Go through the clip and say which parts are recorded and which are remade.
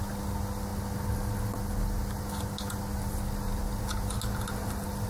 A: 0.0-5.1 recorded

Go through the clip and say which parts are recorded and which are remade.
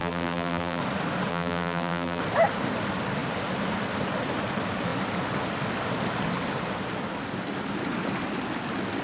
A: 0.0-0.8 remade; 0.8-1.3 recorded; 1.3-2.2 remade; 2.2-9.0 recorded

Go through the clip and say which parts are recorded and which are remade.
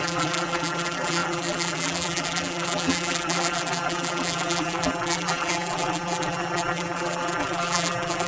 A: 0.0-8.3 remade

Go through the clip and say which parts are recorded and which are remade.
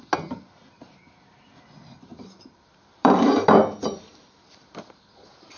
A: 0.0-2.1 recorded; 2.1-4.5 remade; 4.5-5.6 recorded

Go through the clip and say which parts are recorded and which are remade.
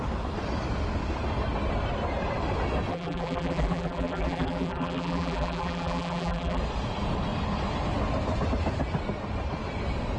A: 0.0-2.9 recorded; 2.9-6.6 remade; 6.6-10.2 recorded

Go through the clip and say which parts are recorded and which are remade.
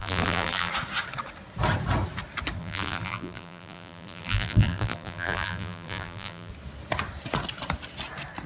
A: 0.0-0.7 remade; 0.7-2.6 recorded; 2.6-6.5 remade; 6.5-8.5 recorded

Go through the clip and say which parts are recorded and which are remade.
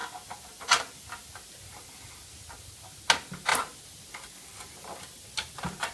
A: 0.0-3.5 recorded; 3.5-4.1 remade; 4.1-5.9 recorded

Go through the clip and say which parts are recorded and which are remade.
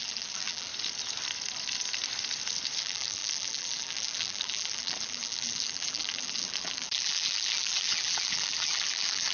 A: 0.0-0.7 remade; 0.7-2.8 recorded; 2.8-9.3 remade